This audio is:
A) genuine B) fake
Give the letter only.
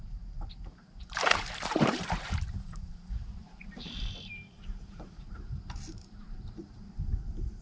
B